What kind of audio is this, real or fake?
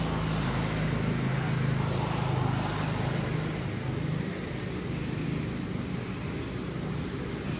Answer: real